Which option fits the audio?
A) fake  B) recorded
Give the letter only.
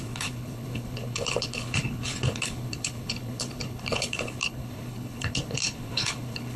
A